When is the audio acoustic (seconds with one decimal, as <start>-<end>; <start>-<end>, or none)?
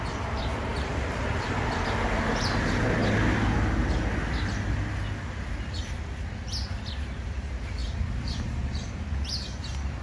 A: 3.0-7.0